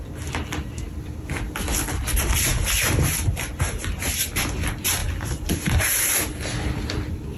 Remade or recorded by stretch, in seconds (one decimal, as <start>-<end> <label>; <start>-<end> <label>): 0.0-7.4 recorded